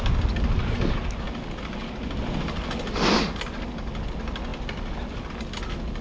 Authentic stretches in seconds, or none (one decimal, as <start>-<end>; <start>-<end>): 0.0-6.0